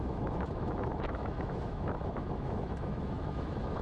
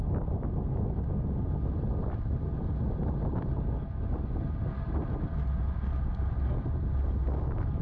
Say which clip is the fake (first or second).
first